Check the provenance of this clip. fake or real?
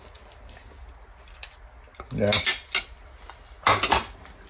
real